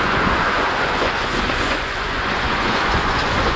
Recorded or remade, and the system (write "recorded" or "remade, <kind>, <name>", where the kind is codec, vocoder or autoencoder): remade, vocoder, Vocos